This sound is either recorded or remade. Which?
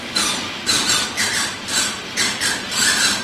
remade